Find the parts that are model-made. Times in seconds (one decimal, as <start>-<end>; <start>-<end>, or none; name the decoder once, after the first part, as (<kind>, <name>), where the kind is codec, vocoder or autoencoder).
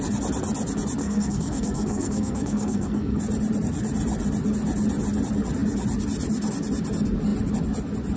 1.0-3.2 (codec, SNAC)